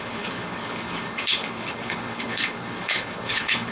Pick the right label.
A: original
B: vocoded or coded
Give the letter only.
B